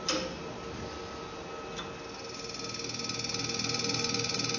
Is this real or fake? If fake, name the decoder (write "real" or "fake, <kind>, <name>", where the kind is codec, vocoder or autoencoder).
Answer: real